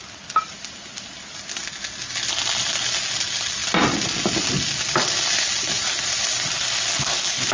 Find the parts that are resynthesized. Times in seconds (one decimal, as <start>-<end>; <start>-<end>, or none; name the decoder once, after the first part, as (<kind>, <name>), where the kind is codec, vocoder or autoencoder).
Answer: none